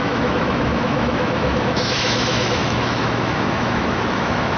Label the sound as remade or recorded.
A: remade